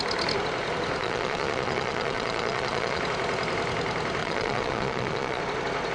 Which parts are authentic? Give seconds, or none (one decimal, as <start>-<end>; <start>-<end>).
0.0-1.0; 3.0-4.2; 5.4-5.9

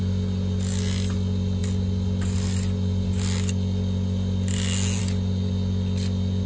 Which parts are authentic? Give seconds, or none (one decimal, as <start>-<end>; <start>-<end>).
0.0-6.5

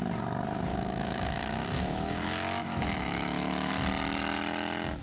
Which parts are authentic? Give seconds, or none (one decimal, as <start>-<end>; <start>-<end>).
0.0-0.7; 3.7-5.0

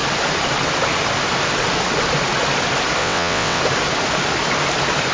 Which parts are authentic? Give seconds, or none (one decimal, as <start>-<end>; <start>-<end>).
0.0-3.0; 3.6-5.1

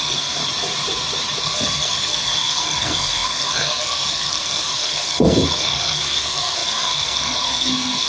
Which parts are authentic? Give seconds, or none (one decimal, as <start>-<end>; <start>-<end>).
0.4-1.4

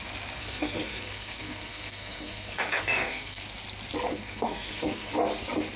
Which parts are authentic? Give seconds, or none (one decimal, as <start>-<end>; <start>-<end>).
0.0-0.4; 3.4-4.1; 5.1-5.8